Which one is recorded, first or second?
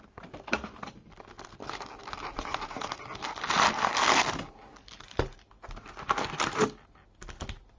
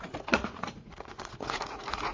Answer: first